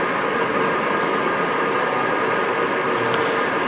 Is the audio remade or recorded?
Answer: remade